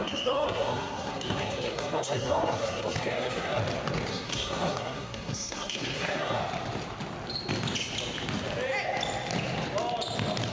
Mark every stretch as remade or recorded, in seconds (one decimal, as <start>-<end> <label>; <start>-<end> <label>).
0.0-3.6 remade; 3.6-4.1 recorded; 4.1-6.4 remade; 6.4-10.5 recorded